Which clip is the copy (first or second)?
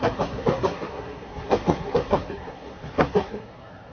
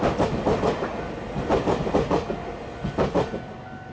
first